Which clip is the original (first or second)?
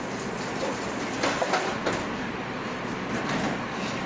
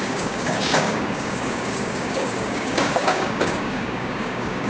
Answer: first